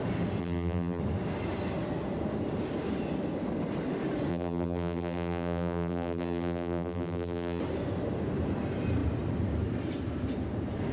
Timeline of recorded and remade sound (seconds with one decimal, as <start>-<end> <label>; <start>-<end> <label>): 0.0-0.4 recorded; 0.4-1.0 remade; 1.0-4.3 recorded; 4.3-7.6 remade; 7.6-10.9 recorded